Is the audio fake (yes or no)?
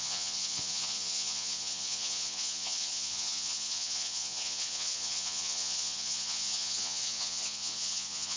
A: yes